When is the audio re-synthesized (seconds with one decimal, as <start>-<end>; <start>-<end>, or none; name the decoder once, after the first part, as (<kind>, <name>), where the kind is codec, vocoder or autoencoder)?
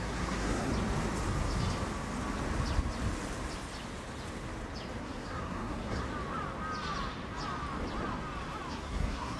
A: 0.0-0.7 (codec, SNAC); 5.0-6.1; 8.7-9.4